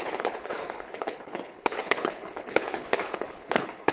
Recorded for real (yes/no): no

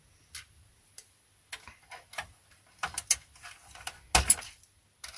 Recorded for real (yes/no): yes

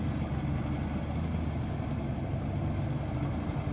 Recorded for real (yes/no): yes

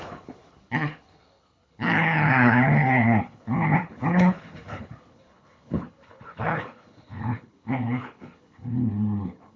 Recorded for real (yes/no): no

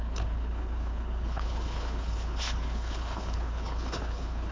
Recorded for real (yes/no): no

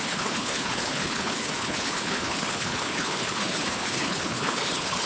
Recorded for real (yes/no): no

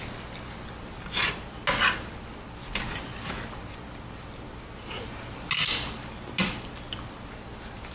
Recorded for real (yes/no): yes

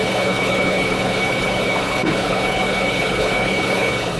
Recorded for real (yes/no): no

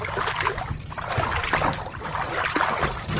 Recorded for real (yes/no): yes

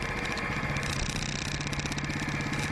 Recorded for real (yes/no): yes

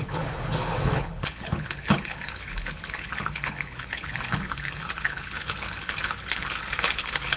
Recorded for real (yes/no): no